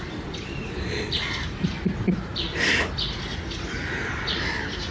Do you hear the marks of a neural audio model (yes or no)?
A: yes